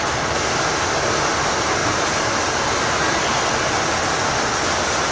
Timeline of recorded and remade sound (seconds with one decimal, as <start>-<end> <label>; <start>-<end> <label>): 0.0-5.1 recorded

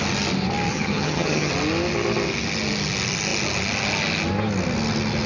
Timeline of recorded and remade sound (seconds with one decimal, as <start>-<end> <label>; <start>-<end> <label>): 0.0-0.7 recorded; 0.7-1.5 remade; 1.5-5.3 recorded

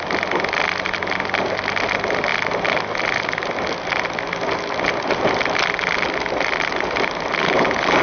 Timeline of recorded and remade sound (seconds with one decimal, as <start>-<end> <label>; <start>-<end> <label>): 0.0-8.0 recorded

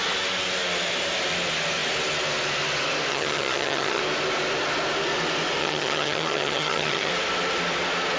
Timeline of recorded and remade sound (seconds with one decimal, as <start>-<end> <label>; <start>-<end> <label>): 0.0-3.1 recorded; 3.1-4.0 remade; 4.0-5.6 recorded; 5.6-7.1 remade; 7.1-8.2 recorded